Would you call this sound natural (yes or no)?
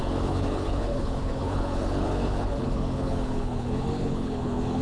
no